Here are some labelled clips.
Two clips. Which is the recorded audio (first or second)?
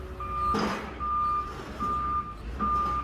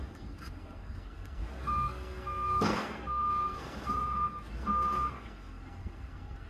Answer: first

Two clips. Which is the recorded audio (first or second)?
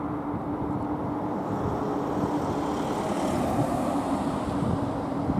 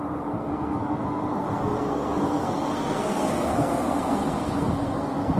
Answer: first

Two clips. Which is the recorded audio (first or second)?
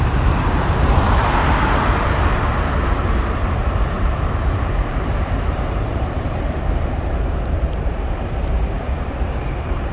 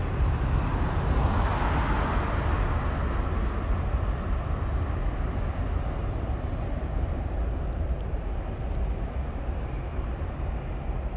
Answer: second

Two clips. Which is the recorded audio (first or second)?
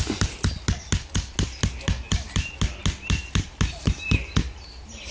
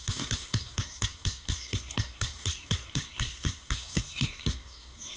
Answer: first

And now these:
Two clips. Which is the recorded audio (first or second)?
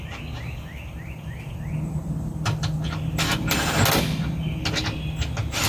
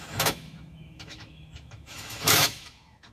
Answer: first